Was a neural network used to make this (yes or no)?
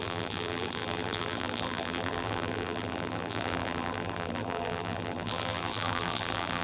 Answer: yes